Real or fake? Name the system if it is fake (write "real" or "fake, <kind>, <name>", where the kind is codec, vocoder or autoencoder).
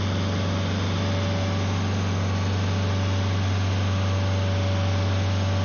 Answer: real